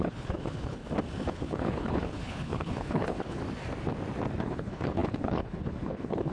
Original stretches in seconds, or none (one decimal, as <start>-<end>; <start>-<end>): 0.8-1.3; 3.4-4.4